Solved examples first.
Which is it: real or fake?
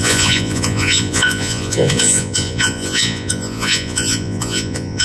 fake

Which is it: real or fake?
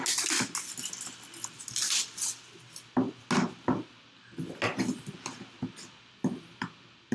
real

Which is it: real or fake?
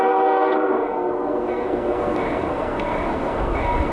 fake